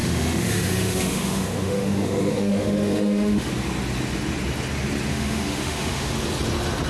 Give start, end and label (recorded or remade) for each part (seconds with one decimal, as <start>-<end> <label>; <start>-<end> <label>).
0.0-3.5 remade; 3.5-5.1 recorded; 5.1-6.1 remade; 6.1-6.9 recorded